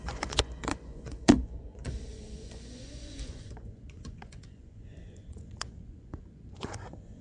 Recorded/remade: remade